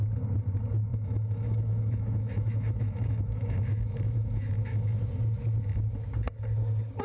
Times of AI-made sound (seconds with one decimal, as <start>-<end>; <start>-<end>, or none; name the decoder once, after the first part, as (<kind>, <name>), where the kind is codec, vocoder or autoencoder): 0.9-5.1 (autoencoder, DAC-VAE)